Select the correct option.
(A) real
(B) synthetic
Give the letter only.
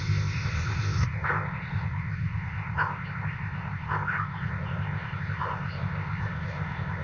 B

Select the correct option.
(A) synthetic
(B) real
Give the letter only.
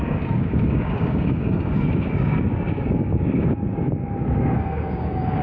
A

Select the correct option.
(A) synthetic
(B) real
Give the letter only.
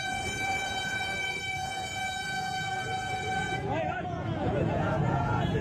A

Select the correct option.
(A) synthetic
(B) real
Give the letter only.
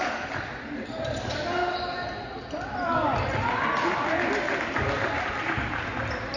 B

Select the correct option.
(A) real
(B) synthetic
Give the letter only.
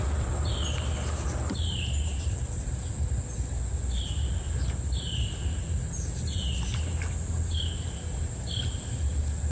A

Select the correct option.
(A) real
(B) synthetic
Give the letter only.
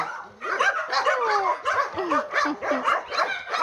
A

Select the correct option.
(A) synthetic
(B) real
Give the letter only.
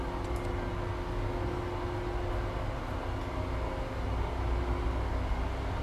B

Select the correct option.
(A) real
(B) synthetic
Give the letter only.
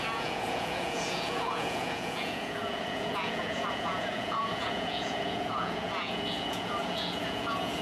B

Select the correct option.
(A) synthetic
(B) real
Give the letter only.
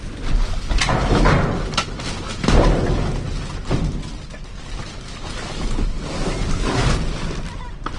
B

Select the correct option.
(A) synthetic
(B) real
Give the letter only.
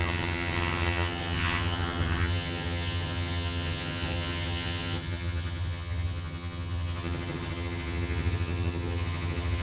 A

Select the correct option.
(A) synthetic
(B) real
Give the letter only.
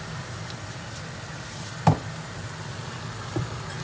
B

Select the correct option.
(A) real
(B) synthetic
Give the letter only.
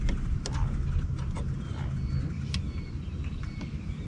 A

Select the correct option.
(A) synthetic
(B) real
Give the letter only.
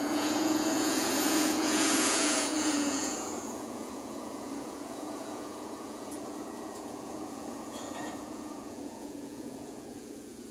A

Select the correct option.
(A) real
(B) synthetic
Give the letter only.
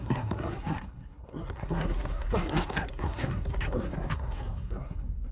B